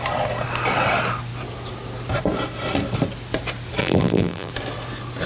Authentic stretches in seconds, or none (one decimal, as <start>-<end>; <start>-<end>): 0.0-3.8; 4.5-5.3